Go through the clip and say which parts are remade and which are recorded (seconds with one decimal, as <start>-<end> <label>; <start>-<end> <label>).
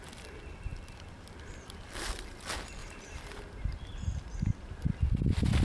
0.0-2.8 recorded; 2.8-4.9 remade; 4.9-5.6 recorded